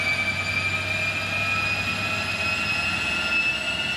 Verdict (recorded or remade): recorded